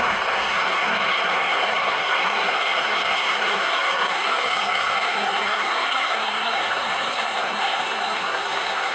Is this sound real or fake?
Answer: fake